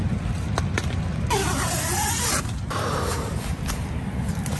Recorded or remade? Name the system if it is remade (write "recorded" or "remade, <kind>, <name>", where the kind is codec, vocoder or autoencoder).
recorded